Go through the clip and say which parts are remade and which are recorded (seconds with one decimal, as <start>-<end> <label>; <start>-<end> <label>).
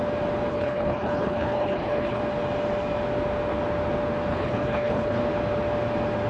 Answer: 0.0-0.5 recorded; 0.5-2.2 remade; 2.2-4.3 recorded; 4.3-5.2 remade; 5.2-6.3 recorded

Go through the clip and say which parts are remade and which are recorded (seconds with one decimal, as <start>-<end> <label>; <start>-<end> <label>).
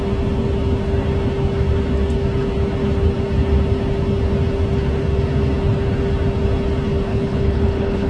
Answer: 0.0-7.1 recorded; 7.1-8.1 remade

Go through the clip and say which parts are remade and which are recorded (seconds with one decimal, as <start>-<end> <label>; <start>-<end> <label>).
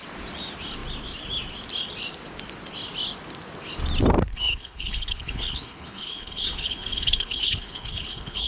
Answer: 0.0-4.3 recorded; 4.3-8.5 remade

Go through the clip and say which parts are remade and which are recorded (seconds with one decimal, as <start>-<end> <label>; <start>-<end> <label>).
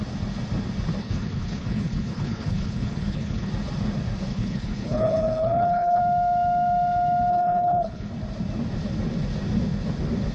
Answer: 0.0-1.0 recorded; 1.0-3.5 remade; 3.5-4.3 recorded; 4.3-6.0 remade; 6.0-7.3 recorded; 7.3-8.1 remade; 8.1-10.3 recorded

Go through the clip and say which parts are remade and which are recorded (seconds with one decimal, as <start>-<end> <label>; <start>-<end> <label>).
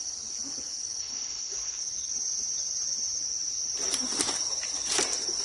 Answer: 0.0-1.0 recorded; 1.0-1.8 remade; 1.8-5.4 recorded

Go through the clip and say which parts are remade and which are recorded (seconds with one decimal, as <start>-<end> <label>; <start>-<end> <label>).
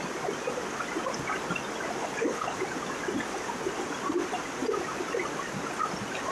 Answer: 0.0-2.0 recorded; 2.0-2.6 remade; 2.6-6.3 recorded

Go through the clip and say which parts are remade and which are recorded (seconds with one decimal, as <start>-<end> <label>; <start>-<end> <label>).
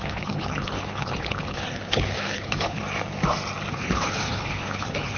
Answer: 0.0-2.8 remade; 2.8-3.7 recorded; 3.7-5.2 remade